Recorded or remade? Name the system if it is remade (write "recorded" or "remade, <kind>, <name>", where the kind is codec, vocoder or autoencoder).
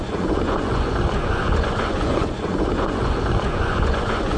remade, vocoder, Vocos